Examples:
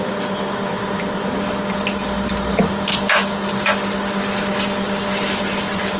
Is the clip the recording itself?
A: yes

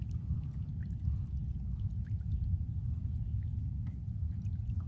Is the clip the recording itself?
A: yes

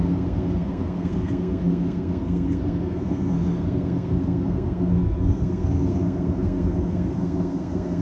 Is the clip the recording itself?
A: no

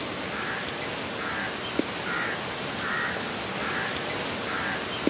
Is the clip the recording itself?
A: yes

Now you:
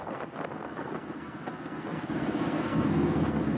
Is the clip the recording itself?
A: no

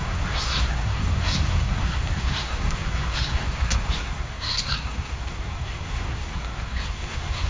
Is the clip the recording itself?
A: no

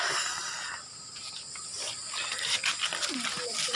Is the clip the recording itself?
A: yes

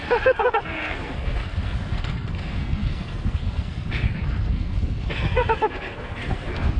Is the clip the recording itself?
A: no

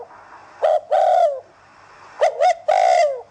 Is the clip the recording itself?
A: yes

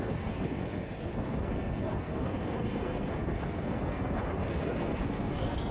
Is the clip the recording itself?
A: no